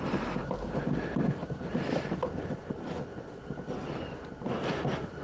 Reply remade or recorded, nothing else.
recorded